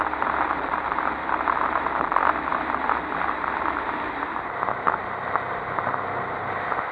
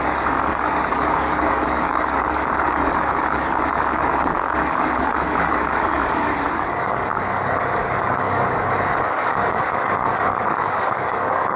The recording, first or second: first